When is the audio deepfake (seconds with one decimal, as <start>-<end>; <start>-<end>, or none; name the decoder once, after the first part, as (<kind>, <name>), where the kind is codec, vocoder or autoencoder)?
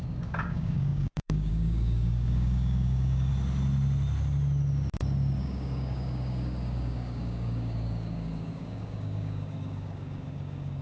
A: 0.0-3.3 (codec, DAC); 5.4-10.8